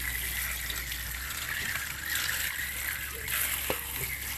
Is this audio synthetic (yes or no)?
no